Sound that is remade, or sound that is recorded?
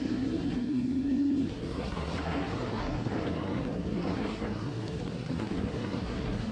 remade